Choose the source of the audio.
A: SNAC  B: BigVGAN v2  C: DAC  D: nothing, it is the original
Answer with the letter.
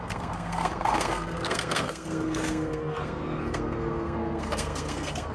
A